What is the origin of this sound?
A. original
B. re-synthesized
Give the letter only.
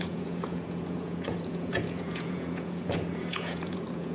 B